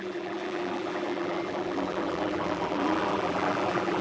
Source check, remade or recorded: remade